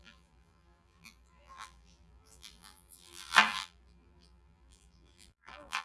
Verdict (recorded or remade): remade